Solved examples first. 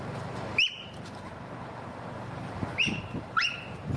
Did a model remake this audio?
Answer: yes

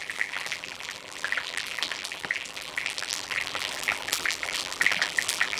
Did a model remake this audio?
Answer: yes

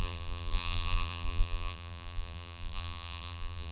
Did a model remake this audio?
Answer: yes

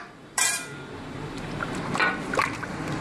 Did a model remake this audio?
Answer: yes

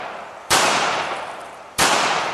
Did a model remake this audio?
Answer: yes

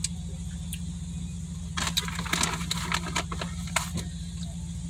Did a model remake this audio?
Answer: no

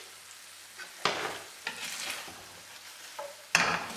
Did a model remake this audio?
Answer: no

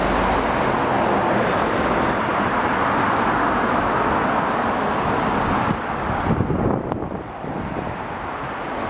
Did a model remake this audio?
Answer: no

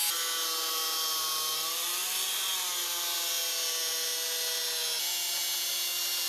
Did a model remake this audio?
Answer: no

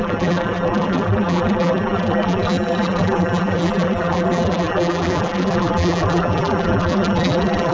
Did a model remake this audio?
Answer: yes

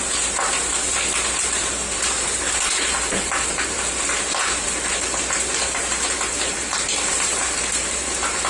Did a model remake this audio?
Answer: yes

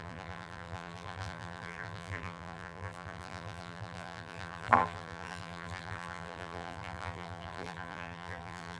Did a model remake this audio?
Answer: yes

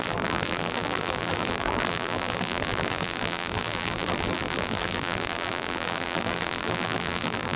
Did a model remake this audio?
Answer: yes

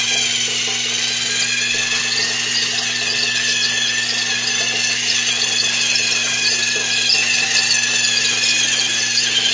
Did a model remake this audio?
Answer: no